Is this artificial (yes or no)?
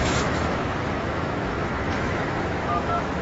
yes